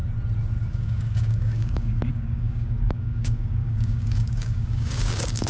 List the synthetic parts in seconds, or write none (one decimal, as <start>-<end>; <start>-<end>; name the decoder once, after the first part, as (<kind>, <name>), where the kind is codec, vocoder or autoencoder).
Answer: 0.6-5.5 (codec, DAC)